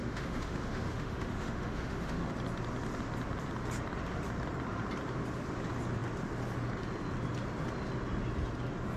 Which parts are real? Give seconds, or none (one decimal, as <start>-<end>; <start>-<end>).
2.3-9.0